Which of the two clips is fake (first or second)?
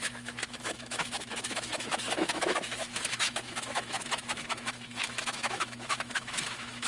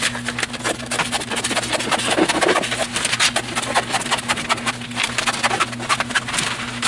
first